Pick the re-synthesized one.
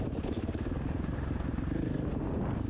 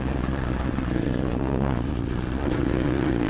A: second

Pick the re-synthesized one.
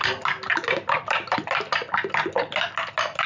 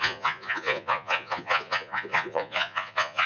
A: second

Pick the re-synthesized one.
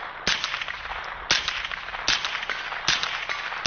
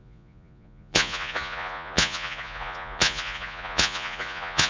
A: second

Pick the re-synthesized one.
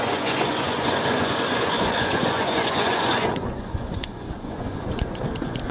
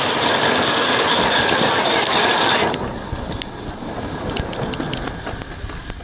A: first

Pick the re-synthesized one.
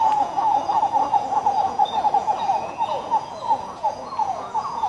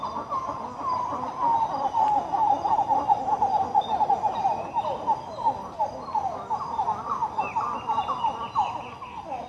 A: first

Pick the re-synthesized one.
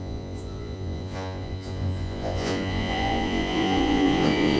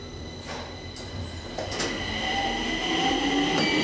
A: first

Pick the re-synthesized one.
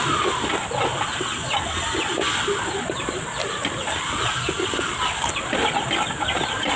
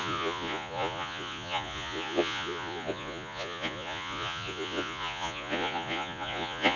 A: second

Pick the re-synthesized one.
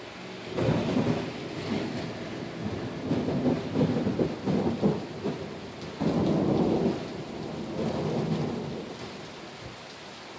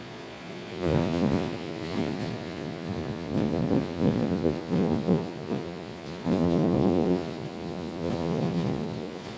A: second